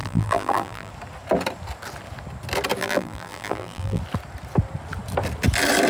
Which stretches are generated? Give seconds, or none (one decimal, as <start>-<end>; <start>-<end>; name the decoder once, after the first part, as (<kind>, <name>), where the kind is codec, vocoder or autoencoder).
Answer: 0.0-0.9 (vocoder, BigVGAN v2); 2.8-4.0